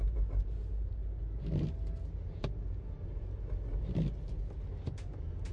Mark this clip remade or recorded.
recorded